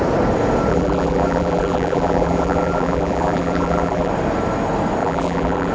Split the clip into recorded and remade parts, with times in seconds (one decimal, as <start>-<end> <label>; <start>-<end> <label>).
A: 0.0-0.7 recorded; 0.7-4.1 remade; 4.1-5.0 recorded; 5.0-5.7 remade

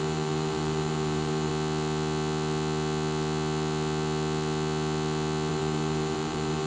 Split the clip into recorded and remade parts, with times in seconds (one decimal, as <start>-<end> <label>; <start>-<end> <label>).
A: 0.0-1.5 remade; 1.5-5.5 recorded; 5.5-6.7 remade